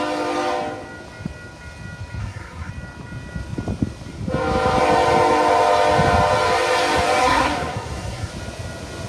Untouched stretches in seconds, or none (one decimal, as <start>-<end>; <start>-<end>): 0.0-2.2; 2.7-7.2; 8.3-9.1